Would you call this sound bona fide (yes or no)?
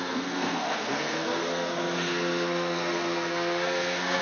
no